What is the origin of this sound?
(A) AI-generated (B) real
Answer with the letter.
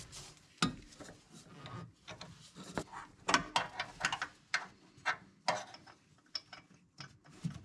B